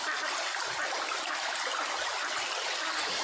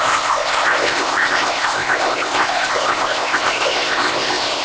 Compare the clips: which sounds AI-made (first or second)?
second